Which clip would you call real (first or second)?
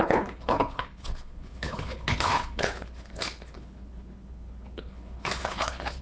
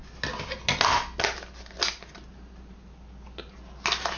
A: second